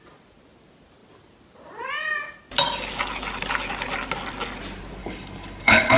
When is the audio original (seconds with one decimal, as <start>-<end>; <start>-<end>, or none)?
0.0-5.0